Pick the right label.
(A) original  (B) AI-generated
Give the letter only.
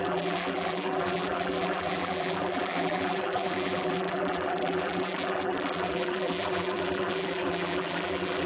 B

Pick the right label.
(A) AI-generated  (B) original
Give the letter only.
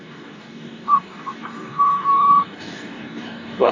A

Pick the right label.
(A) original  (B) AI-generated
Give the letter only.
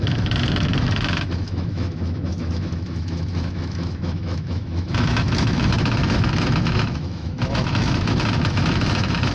B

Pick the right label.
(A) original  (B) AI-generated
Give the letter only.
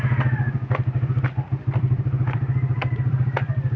B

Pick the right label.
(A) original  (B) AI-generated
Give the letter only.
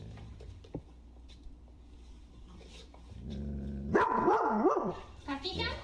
B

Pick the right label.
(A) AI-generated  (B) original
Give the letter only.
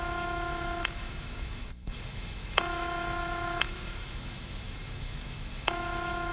A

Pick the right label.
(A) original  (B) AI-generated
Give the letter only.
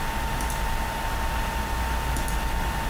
A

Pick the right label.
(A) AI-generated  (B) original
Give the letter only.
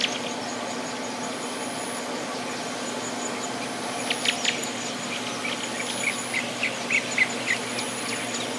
B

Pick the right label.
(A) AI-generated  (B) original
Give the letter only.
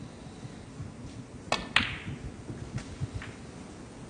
B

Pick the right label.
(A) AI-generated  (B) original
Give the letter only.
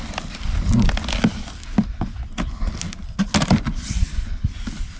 B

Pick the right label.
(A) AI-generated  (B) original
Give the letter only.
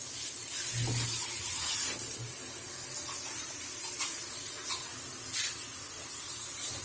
B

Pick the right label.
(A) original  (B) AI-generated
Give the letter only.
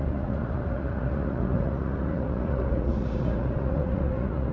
B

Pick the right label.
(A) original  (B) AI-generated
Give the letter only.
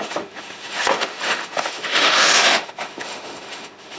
B